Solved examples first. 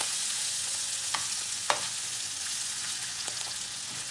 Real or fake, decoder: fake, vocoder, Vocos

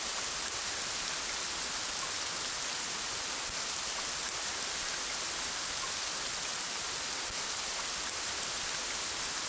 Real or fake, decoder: real